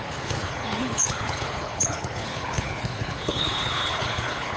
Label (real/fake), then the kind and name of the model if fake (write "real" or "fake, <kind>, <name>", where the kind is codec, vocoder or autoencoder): fake, codec, HILCodec